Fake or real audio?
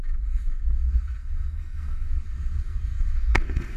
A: fake